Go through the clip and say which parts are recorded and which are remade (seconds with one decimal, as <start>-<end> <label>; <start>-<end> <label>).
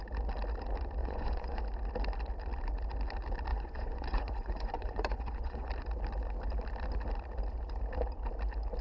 0.0-1.0 recorded; 1.0-1.6 remade; 1.6-3.5 recorded; 3.5-5.7 remade; 5.7-8.8 recorded